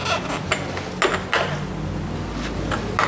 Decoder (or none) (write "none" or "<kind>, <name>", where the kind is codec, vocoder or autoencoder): none